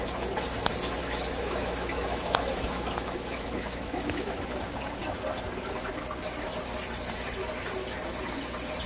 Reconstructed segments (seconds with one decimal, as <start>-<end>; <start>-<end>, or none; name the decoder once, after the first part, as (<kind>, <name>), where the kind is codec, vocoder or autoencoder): 1.0-4.6 (autoencoder, DAC-VAE)